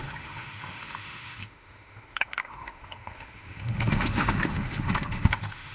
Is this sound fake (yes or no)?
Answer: yes